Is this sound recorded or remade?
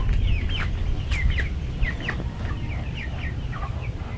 recorded